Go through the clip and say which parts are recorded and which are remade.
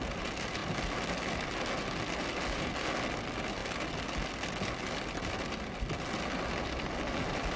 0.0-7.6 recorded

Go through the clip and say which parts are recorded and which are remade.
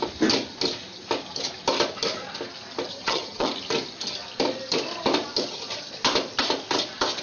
0.0-2.9 recorded; 2.9-3.5 remade; 3.5-7.2 recorded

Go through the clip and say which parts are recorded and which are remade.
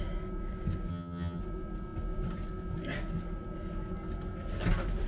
0.0-0.9 recorded; 0.9-1.4 remade; 1.4-5.1 recorded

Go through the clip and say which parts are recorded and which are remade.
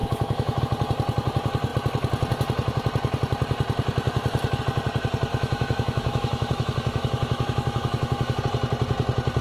0.0-0.6 remade; 0.6-5.3 recorded; 5.3-8.4 remade; 8.4-9.4 recorded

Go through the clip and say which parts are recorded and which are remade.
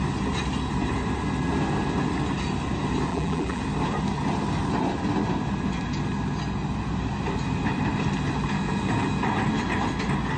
0.0-3.1 recorded; 3.1-3.6 remade; 3.6-10.4 recorded